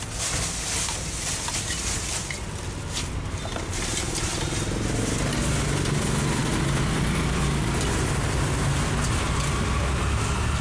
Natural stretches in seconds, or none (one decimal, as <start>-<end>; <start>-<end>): 0.0-10.6